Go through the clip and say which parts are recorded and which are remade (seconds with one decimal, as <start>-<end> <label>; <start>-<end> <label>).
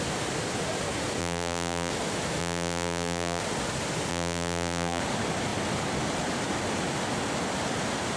0.0-1.2 recorded; 1.2-1.9 remade; 1.9-2.4 recorded; 2.4-3.4 remade; 3.4-4.1 recorded; 4.1-5.0 remade; 5.0-8.2 recorded